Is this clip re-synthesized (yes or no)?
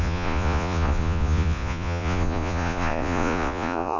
yes